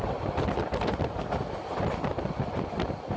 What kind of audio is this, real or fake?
real